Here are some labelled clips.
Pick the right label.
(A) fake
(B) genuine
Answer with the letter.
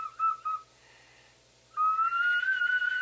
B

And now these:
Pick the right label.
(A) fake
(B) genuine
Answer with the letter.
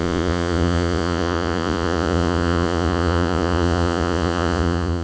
A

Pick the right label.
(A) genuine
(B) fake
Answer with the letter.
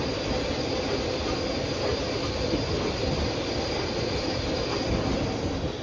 A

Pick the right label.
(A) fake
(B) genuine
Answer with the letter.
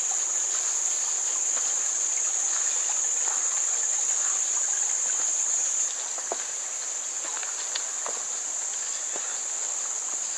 B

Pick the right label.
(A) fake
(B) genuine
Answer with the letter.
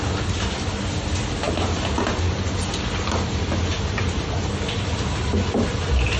B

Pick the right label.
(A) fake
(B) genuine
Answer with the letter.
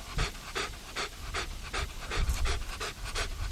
A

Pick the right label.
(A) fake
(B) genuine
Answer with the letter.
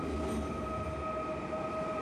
B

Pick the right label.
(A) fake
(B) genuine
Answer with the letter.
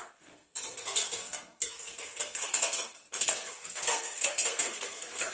A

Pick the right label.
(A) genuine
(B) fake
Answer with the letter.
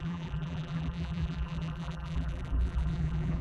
B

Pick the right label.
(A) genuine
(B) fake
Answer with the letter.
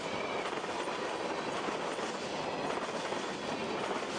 A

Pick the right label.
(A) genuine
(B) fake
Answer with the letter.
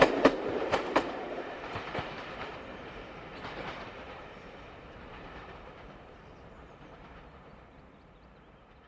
B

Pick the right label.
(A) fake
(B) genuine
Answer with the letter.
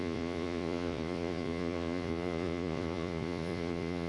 A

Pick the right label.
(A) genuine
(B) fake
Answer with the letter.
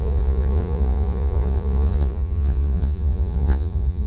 B